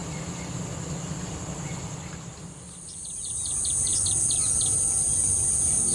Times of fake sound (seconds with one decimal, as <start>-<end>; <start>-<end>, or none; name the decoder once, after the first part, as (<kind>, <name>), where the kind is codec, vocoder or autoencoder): none